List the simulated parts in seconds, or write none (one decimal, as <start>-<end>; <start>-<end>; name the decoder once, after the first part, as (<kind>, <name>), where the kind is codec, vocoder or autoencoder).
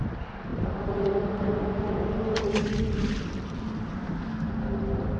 none